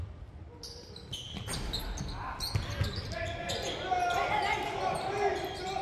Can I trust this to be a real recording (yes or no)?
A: yes